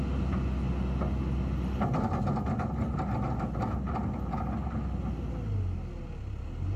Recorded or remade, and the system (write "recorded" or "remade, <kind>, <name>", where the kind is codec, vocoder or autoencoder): recorded